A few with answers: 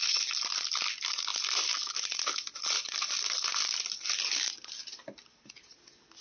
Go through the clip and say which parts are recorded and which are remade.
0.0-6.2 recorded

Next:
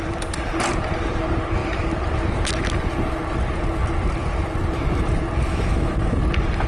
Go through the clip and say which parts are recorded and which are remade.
0.0-5.5 recorded; 5.5-6.2 remade; 6.2-6.7 recorded

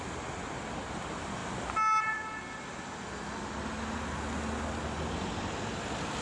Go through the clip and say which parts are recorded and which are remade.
0.0-6.2 recorded

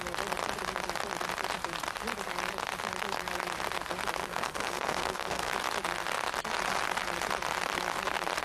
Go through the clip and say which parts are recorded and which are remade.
0.0-4.2 recorded; 4.2-5.5 remade; 5.5-8.4 recorded

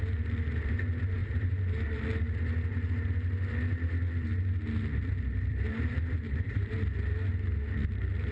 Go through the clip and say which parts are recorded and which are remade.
0.0-1.2 recorded; 1.2-2.0 remade; 2.0-5.5 recorded; 5.5-6.7 remade; 6.7-8.3 recorded

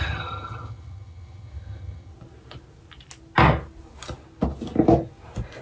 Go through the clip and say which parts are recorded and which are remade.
0.0-2.1 remade; 2.1-5.6 recorded